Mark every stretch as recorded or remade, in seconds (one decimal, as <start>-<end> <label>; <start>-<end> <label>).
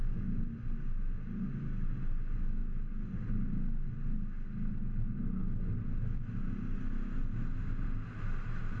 0.0-8.8 recorded